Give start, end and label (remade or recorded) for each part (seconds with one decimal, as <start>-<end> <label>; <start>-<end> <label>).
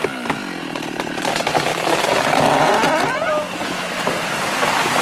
0.0-1.7 recorded; 1.7-2.4 remade; 2.4-3.6 recorded; 3.6-4.1 remade; 4.1-5.0 recorded